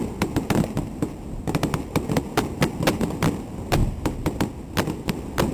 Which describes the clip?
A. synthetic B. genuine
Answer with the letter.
B